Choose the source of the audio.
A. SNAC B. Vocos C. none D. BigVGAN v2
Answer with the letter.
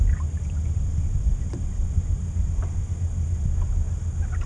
C